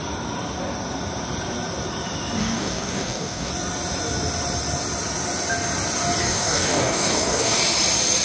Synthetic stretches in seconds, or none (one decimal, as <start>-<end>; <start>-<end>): 2.4-3.5; 6.2-7.6